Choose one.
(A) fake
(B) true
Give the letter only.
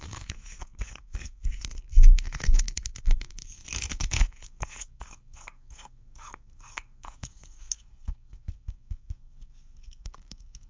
A